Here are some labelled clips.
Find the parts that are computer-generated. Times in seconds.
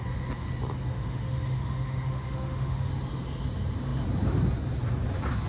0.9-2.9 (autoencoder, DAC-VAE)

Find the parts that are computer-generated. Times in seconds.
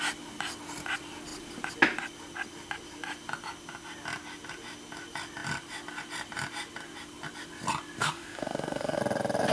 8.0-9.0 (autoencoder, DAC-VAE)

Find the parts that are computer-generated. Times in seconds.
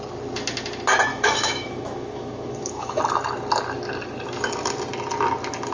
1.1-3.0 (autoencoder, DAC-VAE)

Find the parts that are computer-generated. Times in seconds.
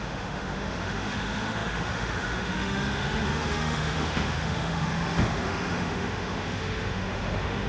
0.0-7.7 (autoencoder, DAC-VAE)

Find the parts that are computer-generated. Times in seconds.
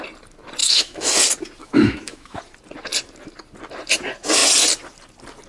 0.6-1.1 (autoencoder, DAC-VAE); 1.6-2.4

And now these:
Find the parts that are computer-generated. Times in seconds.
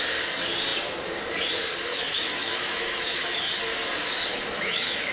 1.9-3.6 (autoencoder, DAC-VAE); 4.3-5.1